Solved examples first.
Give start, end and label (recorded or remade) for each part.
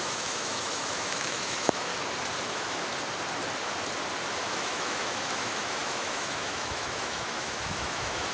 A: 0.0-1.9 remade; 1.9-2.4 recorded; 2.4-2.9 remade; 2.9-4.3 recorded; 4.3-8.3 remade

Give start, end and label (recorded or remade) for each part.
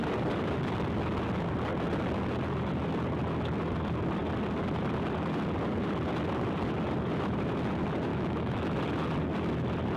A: 0.0-8.1 recorded; 8.1-8.8 remade; 8.8-10.0 recorded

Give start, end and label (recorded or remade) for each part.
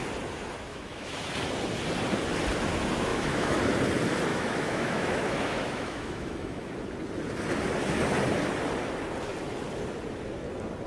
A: 0.0-0.7 recorded; 0.7-1.3 remade; 1.3-3.1 recorded; 3.1-3.6 remade; 3.6-4.3 recorded; 4.3-6.7 remade; 6.7-10.9 recorded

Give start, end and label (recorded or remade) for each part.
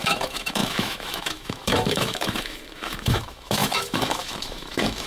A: 0.0-5.1 remade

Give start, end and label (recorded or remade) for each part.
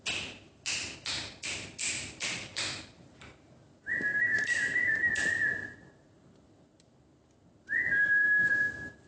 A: 0.0-4.1 recorded; 4.1-5.1 remade; 5.1-8.0 recorded; 8.0-8.7 remade; 8.7-9.1 recorded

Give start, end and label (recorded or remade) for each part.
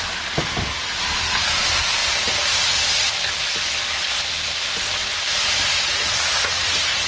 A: 0.0-7.1 recorded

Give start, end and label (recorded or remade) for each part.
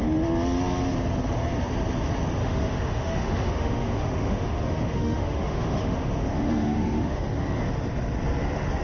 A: 0.0-2.4 recorded; 2.4-7.2 remade; 7.2-8.8 recorded